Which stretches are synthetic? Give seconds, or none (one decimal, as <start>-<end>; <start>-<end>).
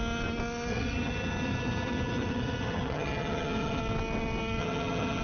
0.7-3.8; 4.6-5.2